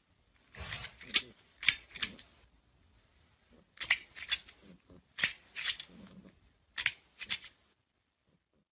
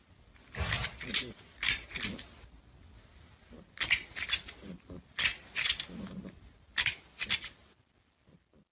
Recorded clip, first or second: second